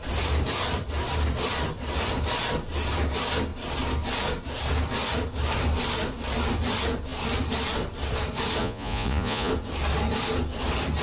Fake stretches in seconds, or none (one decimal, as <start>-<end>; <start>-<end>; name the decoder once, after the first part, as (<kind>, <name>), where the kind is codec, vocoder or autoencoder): 8.6-9.5 (vocoder, Vocos)